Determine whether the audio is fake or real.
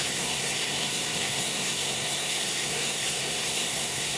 fake